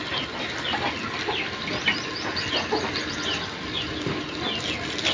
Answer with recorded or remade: recorded